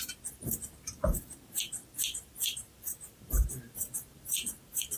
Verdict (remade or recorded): remade